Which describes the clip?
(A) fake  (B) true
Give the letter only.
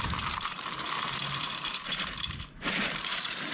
A